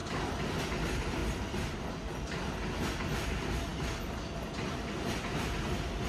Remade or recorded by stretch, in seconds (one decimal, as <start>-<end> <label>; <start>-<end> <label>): 0.0-1.2 recorded; 1.2-1.9 remade; 1.9-3.7 recorded; 3.7-4.5 remade; 4.5-6.1 recorded